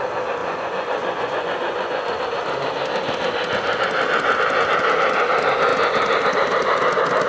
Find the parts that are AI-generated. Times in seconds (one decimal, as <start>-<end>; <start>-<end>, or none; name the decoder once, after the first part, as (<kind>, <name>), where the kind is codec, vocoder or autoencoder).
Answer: 0.4-2.2 (vocoder, Vocos)